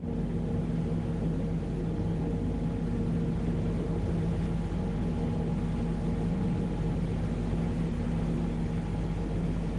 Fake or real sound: real